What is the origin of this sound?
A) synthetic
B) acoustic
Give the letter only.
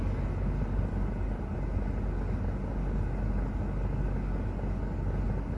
B